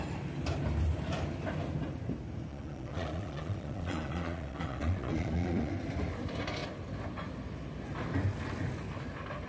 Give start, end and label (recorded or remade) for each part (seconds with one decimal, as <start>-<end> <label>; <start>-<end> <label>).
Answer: 0.0-2.5 recorded; 2.5-5.7 remade; 5.7-9.5 recorded